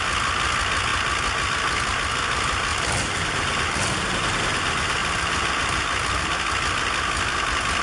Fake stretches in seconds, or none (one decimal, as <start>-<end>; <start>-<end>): none